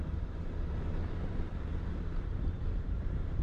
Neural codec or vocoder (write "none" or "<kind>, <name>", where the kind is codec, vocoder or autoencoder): vocoder, BigVGAN v2